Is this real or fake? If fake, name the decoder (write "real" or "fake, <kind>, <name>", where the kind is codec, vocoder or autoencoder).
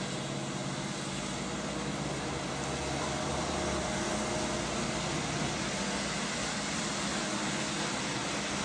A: real